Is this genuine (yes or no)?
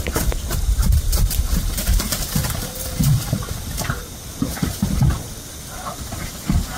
no